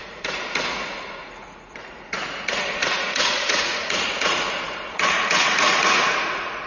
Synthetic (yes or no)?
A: yes